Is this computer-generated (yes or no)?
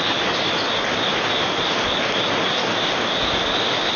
no